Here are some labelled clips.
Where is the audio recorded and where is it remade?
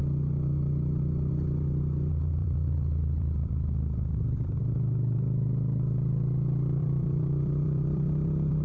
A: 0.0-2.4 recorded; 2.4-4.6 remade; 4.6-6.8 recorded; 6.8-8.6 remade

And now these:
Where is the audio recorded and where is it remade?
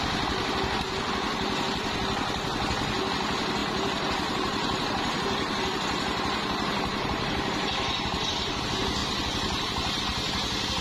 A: 0.0-3.6 recorded; 3.6-8.6 remade; 8.6-9.0 recorded; 9.0-10.0 remade; 10.0-10.8 recorded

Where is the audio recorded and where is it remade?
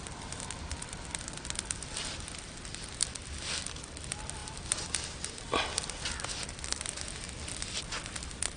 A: 0.0-8.6 recorded